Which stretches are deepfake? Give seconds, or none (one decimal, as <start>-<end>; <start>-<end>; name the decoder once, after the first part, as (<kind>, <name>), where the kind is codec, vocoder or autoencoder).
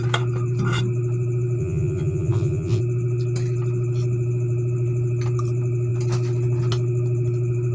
1.6-2.8 (vocoder, Vocos)